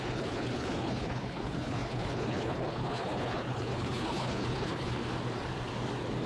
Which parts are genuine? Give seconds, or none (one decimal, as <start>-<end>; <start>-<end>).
5.0-6.3

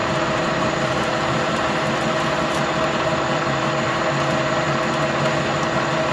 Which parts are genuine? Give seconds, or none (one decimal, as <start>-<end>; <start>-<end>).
3.7-6.1

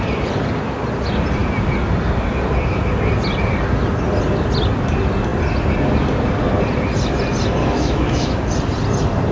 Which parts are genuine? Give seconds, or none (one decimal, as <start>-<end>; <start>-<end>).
0.0-7.6; 8.4-9.3

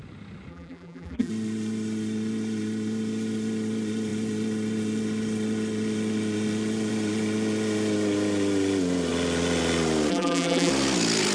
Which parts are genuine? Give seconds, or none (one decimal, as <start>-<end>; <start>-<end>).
0.0-0.5; 1.3-10.1; 10.7-11.3

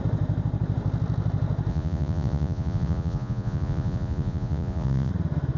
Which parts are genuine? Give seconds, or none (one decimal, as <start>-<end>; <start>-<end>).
0.0-1.7; 5.1-5.6

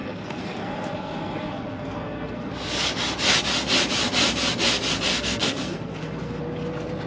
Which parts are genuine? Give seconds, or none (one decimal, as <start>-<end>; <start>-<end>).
2.5-5.1; 6.4-7.1

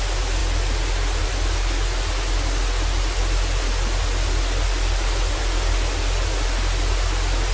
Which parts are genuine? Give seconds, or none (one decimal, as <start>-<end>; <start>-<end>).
0.0-7.5

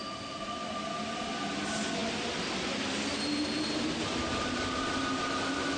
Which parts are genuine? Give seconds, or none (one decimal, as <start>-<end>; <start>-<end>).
0.0-5.8